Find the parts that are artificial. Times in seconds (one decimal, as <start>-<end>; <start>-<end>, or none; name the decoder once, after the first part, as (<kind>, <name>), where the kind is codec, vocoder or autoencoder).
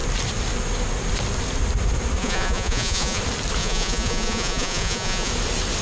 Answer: 2.2-3.2 (vocoder, Vocos); 3.6-5.3